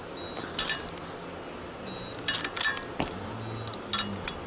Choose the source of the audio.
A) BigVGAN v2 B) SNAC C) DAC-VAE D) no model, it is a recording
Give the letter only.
D